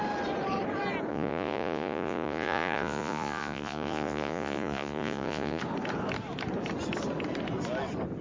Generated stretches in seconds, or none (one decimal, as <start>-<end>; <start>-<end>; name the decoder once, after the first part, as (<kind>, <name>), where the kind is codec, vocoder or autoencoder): 1.1-5.6 (vocoder, Vocos)